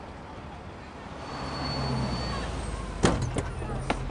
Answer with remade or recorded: recorded